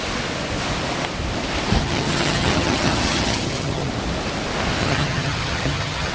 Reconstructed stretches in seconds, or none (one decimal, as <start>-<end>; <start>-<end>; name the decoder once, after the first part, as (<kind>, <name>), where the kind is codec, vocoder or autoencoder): 1.8-3.9 (vocoder, HiFi-GAN); 4.8-6.1